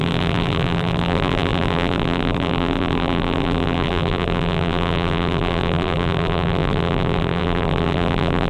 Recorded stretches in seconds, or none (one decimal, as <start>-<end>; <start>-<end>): none